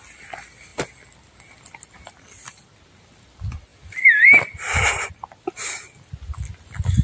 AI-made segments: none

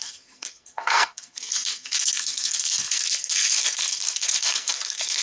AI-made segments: 0.0-5.2 (codec, SNAC)